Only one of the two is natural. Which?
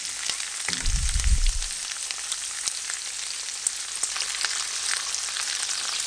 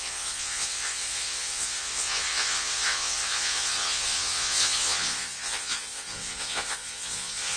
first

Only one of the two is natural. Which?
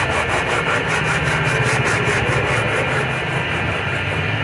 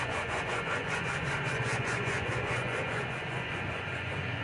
first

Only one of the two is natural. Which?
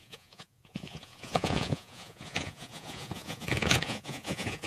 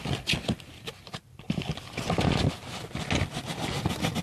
second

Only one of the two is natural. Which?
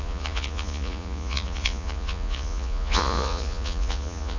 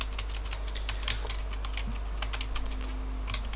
second